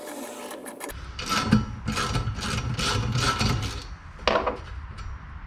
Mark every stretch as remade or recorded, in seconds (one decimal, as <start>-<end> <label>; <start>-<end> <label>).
0.0-5.5 recorded